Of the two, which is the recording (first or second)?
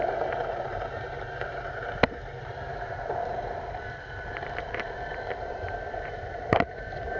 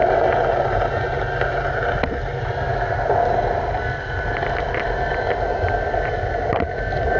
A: second